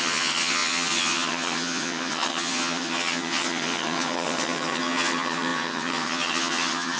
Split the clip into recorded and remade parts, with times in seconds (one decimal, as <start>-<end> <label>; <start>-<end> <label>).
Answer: 0.0-7.0 remade